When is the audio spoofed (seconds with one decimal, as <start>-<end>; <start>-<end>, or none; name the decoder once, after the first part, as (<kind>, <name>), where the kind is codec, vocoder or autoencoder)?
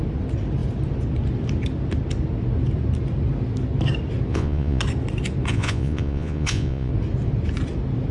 4.3-4.8 (vocoder, Vocos); 5.5-6.9